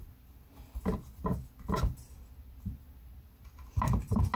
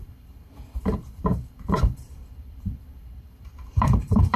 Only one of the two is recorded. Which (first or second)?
first